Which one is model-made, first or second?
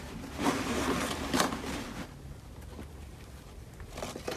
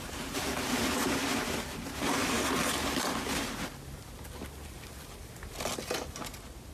first